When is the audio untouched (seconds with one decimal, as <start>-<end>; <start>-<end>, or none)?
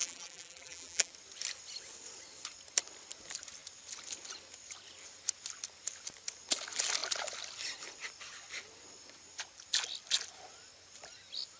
1.1-11.6